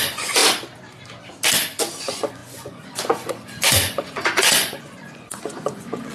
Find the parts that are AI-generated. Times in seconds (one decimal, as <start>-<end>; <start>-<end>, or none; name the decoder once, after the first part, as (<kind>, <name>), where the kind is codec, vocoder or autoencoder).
0.0-0.4 (vocoder, Vocos); 2.0-6.1